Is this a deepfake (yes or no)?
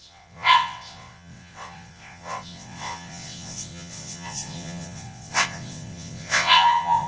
yes